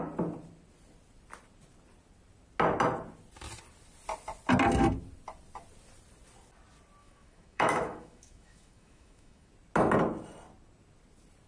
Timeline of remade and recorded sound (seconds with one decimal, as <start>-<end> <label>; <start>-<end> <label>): 0.0-7.0 recorded; 7.0-9.5 remade; 9.5-11.5 recorded